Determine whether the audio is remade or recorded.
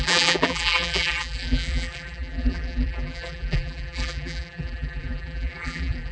remade